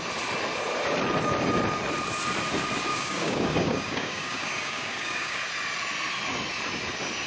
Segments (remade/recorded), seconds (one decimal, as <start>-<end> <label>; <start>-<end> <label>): 0.0-2.9 recorded; 2.9-5.4 remade; 5.4-7.3 recorded